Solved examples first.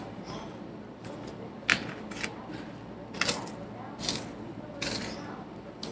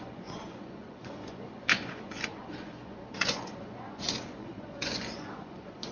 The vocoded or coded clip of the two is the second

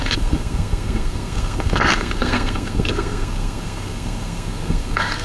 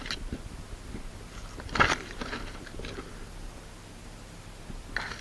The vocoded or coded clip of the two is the first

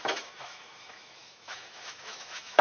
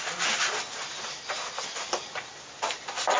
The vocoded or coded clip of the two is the first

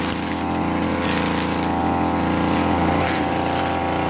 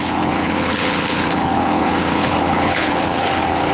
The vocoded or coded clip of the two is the second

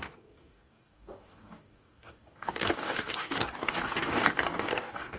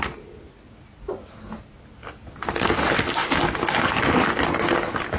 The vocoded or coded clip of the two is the first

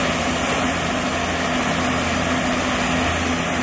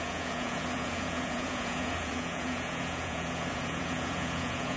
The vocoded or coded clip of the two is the second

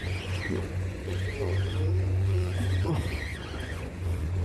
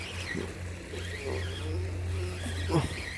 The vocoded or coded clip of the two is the first